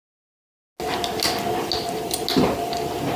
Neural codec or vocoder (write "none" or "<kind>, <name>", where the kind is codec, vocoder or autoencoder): none